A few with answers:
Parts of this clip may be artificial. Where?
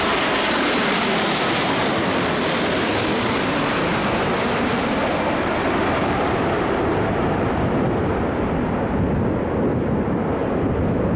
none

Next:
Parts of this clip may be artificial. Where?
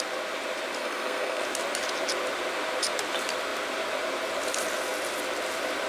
0.8-1.4 (codec, SNAC)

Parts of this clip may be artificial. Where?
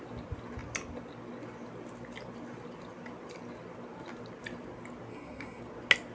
5.1-5.6 (codec, SNAC)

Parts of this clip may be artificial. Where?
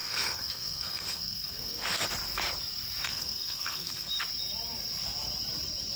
0.0-2.1 (codec, SNAC); 3.1-4.1